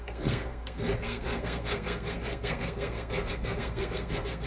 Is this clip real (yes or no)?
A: no